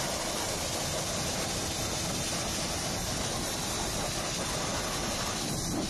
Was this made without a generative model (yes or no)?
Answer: yes